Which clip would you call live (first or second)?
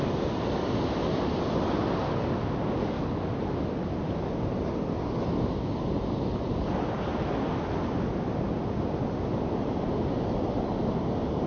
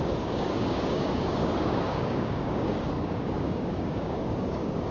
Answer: first